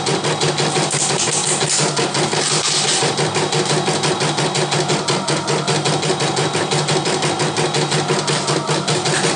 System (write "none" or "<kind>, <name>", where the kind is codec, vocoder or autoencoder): none